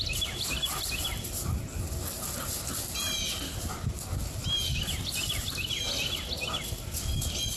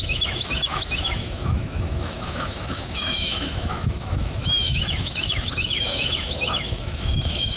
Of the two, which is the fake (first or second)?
second